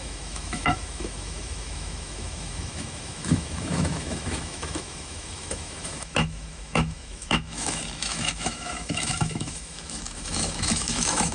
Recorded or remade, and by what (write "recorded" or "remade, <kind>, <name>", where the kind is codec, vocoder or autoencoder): remade, autoencoder, DAC-VAE